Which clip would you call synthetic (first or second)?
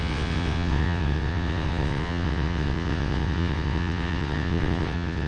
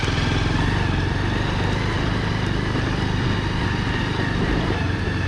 first